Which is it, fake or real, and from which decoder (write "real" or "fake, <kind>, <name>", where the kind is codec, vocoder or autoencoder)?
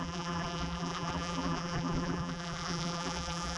fake, vocoder, BigVGAN v2